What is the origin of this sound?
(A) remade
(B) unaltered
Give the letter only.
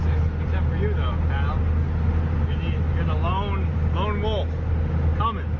B